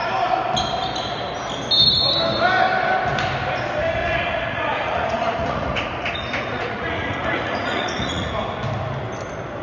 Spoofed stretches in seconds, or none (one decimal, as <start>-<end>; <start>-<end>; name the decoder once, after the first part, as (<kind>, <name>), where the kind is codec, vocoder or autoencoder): 4.0-8.3 (vocoder, Vocos)